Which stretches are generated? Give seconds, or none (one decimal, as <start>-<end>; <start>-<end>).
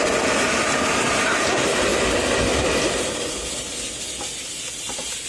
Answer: none